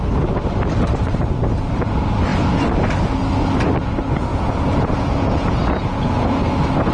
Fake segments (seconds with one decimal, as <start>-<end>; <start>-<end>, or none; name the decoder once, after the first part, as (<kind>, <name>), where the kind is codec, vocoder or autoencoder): 4.3-6.4 (vocoder, Vocos)